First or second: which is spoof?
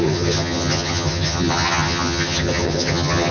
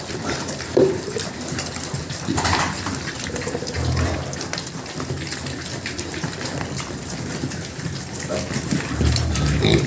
first